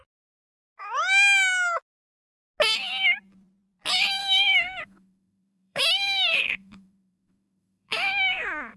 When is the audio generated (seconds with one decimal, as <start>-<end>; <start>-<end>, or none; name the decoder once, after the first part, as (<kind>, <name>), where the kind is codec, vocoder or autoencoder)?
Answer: 4.2-8.8 (autoencoder, DAC-VAE)